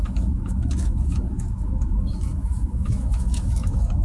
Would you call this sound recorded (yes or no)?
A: no